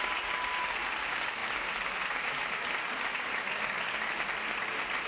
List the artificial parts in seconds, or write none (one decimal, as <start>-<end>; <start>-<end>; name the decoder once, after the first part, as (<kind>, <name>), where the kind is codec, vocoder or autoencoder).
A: none